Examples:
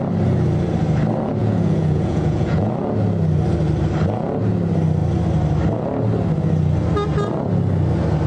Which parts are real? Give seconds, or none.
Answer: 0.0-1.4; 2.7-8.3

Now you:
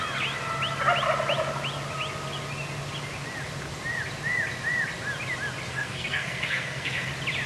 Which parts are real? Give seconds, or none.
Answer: 0.0-5.7; 7.1-7.5

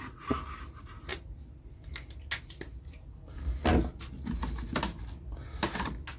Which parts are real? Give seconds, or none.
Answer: 0.0-6.2

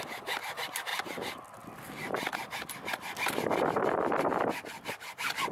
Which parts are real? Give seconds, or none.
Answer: 0.0-5.5

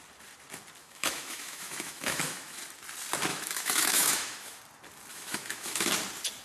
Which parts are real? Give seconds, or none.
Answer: 0.0-0.8; 2.6-3.3; 4.6-5.1; 5.9-6.4

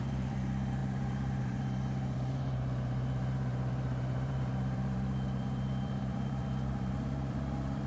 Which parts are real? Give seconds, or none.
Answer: none